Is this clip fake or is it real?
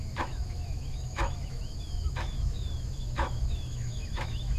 fake